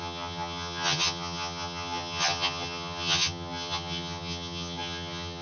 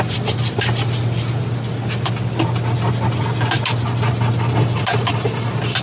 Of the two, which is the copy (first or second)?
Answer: first